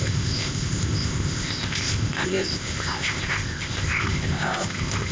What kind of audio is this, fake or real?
fake